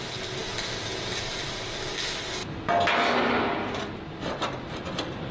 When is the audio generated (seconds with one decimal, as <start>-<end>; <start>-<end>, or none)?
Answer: none